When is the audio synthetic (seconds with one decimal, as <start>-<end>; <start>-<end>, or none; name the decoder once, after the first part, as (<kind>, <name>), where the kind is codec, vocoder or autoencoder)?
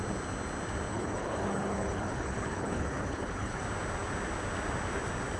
0.9-3.6 (codec, HILCodec)